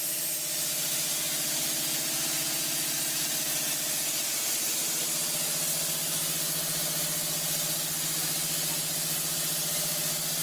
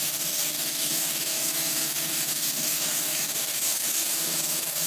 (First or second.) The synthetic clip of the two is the second